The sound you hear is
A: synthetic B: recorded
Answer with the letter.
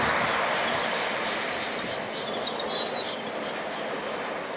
B